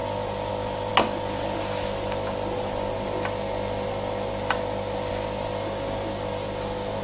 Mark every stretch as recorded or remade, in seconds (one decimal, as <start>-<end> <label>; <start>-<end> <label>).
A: 0.0-7.0 recorded